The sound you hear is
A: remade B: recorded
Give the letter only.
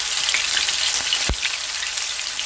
A